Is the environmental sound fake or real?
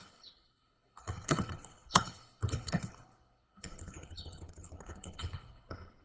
fake